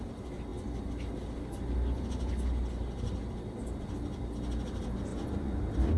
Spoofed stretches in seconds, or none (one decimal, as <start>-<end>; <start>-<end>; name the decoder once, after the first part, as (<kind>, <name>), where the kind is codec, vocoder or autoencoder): 5.1-5.6 (vocoder, Vocos)